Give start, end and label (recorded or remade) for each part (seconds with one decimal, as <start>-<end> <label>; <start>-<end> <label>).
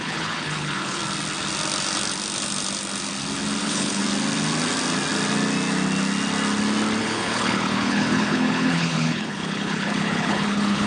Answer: 0.0-1.0 remade; 1.0-3.6 recorded; 3.6-4.0 remade; 4.0-7.0 recorded; 7.0-10.9 remade